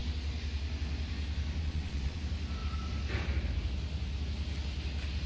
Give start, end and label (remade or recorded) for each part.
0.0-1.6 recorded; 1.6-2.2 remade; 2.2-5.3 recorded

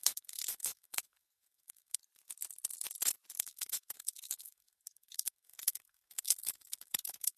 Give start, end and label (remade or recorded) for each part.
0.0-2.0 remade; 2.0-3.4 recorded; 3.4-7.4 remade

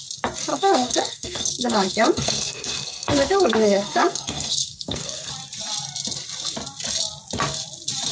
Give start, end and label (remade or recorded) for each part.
0.0-0.5 recorded; 0.5-5.3 remade; 5.3-8.1 recorded

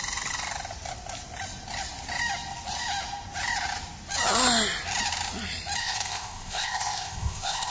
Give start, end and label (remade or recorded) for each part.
0.0-5.8 recorded; 5.8-7.7 remade

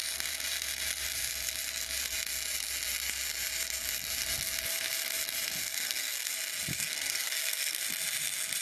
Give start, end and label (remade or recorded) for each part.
0.0-5.6 recorded; 5.6-6.3 remade; 6.3-6.7 recorded; 6.7-7.8 remade; 7.8-8.6 recorded

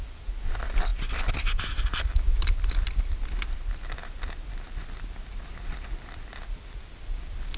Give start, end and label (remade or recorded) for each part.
0.0-7.6 recorded

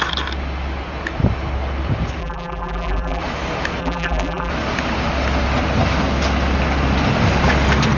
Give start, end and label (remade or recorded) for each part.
0.0-2.2 recorded; 2.2-3.2 remade; 3.2-3.8 recorded; 3.8-4.5 remade; 4.5-8.0 recorded

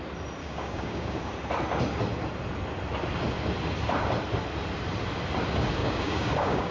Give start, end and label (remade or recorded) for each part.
0.0-0.4 recorded; 0.4-1.3 remade; 1.3-5.8 recorded; 5.8-6.7 remade